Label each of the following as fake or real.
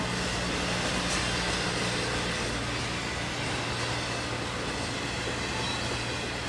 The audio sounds real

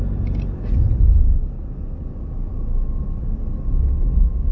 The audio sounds real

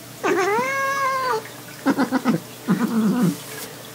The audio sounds real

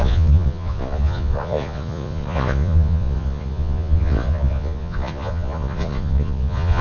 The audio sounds fake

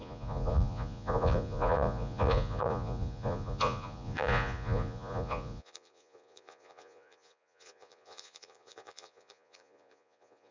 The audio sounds fake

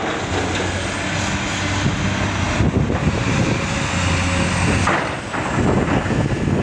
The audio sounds real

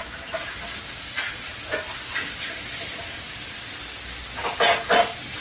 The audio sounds real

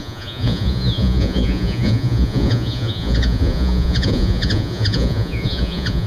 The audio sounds fake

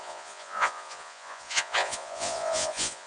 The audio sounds fake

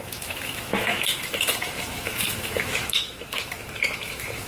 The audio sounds fake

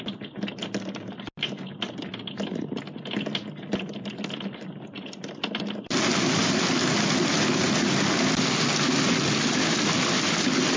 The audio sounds real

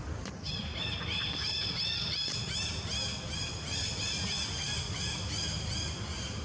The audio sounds real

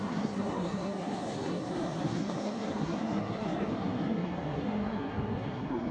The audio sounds fake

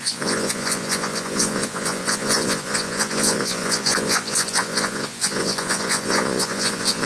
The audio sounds fake